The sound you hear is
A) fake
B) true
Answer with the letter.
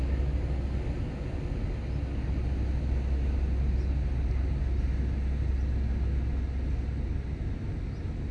B